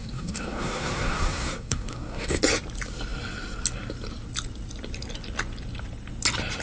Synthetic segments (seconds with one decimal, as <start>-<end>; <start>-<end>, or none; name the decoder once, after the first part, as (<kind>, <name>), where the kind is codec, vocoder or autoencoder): 0.0-2.4 (codec, SNAC)